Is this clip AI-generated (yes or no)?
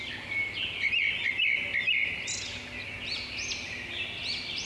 no